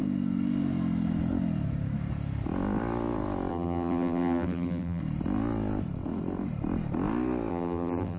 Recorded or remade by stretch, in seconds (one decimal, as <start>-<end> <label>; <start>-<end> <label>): 0.0-3.5 recorded; 3.5-5.0 remade; 5.0-7.5 recorded; 7.5-8.2 remade